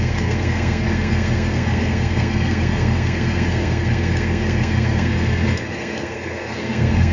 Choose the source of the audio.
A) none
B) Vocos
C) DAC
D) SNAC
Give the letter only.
D